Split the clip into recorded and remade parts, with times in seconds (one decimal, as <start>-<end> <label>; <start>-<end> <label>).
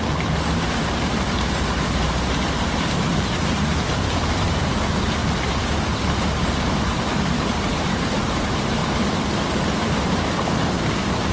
0.0-5.2 remade; 5.2-6.5 recorded; 6.5-6.9 remade; 6.9-7.5 recorded; 7.5-8.8 remade; 8.8-9.5 recorded; 9.5-11.3 remade